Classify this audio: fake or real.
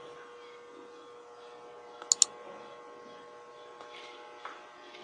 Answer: real